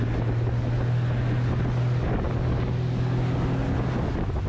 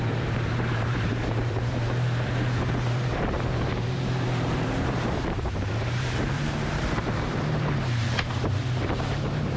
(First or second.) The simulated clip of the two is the second